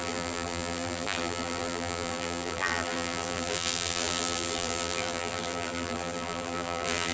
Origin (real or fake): fake